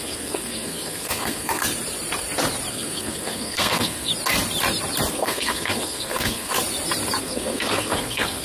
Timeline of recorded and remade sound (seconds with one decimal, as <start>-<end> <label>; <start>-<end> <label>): 0.0-1.6 remade; 1.6-2.7 recorded; 2.7-4.1 remade; 4.1-5.1 recorded; 5.1-6.5 remade; 6.5-7.2 recorded; 7.2-8.4 remade